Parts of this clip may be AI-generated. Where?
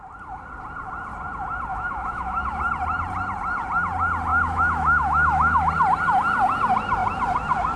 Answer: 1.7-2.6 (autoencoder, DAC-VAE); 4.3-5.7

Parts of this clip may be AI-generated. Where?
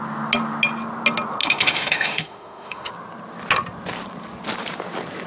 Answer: 1.4-2.9 (autoencoder, DAC-VAE)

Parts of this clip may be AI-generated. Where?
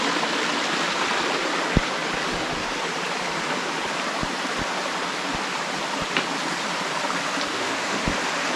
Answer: 7.5-8.0 (autoencoder, DAC-VAE)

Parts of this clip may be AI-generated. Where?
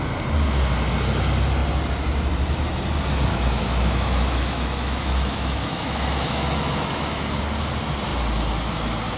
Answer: 3.3-7.4 (autoencoder, DAC-VAE)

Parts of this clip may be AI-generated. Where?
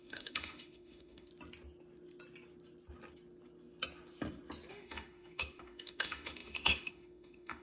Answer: 0.0-1.3 (autoencoder, DAC-VAE); 4.7-7.6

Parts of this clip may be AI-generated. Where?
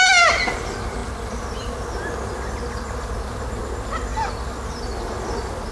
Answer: none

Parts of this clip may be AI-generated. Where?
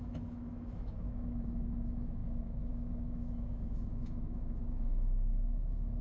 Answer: 0.0-6.0 (autoencoder, DAC-VAE)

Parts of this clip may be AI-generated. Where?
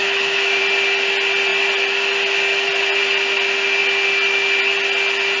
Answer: 0.0-0.6 (autoencoder, DAC-VAE)